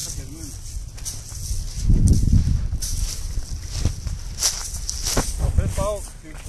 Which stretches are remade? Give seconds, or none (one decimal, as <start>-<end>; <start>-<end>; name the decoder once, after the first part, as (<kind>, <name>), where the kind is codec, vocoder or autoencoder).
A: none